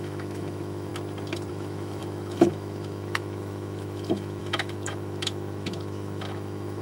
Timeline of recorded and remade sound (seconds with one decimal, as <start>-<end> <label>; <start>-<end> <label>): 0.0-0.9 remade; 0.9-1.5 recorded; 1.5-6.8 remade

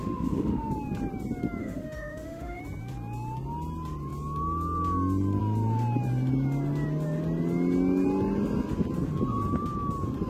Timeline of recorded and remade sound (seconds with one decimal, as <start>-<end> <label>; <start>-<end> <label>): 0.0-0.7 remade; 0.7-1.6 recorded; 1.6-2.6 remade; 2.6-10.3 recorded

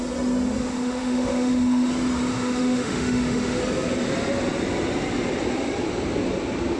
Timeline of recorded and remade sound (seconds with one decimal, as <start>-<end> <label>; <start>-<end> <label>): 0.0-0.6 recorded; 0.6-1.9 remade; 1.9-2.3 recorded; 2.3-3.6 remade; 3.6-6.8 recorded

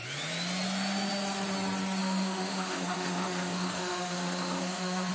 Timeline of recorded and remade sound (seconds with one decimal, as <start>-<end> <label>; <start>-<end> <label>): 0.0-2.0 recorded; 2.0-5.1 remade

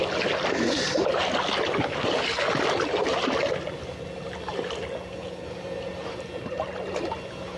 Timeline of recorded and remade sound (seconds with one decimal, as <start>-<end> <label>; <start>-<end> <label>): 0.0-7.6 recorded

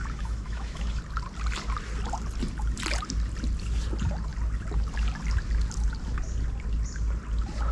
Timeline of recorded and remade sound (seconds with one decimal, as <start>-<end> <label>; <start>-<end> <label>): 0.0-1.0 remade; 1.0-7.7 recorded